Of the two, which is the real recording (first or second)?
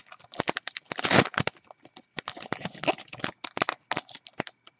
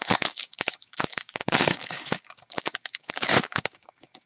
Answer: first